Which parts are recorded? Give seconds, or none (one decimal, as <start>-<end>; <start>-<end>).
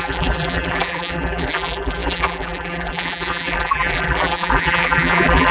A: none